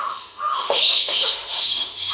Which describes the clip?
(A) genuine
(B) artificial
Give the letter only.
B